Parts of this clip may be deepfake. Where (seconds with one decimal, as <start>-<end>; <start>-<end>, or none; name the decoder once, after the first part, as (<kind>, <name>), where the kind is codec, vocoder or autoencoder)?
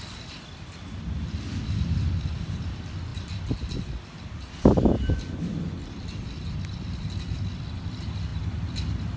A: none